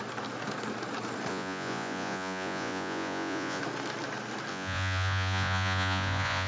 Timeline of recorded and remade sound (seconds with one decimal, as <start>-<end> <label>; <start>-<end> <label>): 0.0-1.3 recorded; 1.3-3.6 remade; 3.6-4.5 recorded; 4.5-6.5 remade